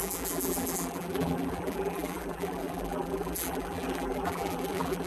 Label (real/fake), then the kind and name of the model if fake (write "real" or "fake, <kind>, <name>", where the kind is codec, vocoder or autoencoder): fake, vocoder, BigVGAN v2